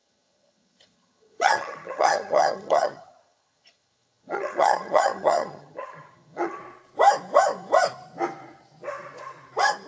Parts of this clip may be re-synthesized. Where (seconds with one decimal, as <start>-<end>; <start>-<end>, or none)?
0.0-6.6